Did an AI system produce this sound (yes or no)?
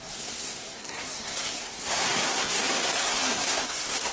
yes